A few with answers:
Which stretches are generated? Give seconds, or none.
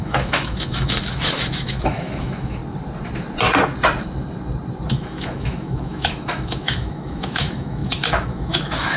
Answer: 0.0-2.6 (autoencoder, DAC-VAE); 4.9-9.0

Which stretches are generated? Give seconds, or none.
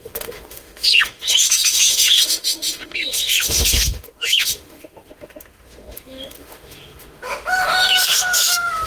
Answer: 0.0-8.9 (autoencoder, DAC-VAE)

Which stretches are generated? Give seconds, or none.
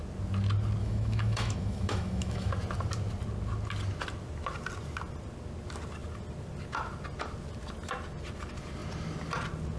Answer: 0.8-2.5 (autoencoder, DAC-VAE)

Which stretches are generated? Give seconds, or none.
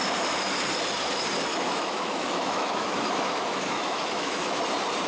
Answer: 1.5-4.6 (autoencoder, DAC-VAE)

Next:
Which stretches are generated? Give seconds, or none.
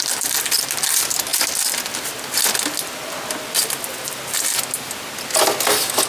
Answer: none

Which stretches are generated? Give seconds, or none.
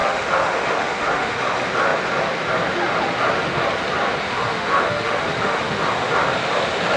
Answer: 0.0-1.4 (autoencoder, DAC-VAE); 4.3-5.9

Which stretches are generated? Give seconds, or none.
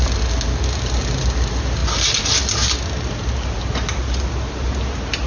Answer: none